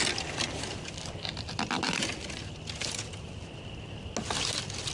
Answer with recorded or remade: recorded